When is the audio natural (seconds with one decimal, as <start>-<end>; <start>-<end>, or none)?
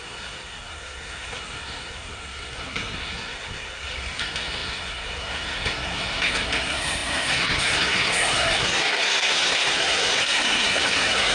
none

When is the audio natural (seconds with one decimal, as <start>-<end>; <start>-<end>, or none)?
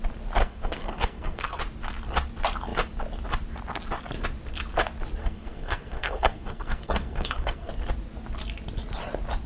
0.0-0.4; 1.6-5.2; 7.7-9.5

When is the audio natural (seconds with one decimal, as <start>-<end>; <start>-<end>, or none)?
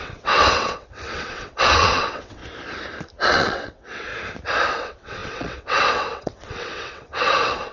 2.4-3.3; 4.1-4.7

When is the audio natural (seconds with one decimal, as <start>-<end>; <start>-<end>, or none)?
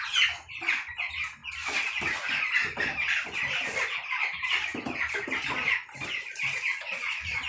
0.0-7.5